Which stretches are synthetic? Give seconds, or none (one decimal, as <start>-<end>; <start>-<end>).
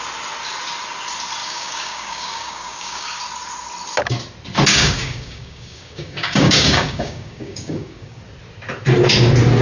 1.4-3.2; 4.7-8.2